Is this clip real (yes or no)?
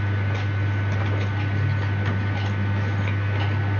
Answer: yes